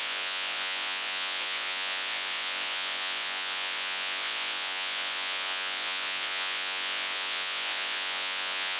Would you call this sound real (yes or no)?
no